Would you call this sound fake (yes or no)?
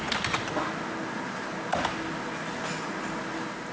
no